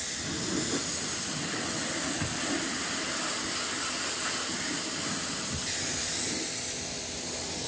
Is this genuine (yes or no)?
yes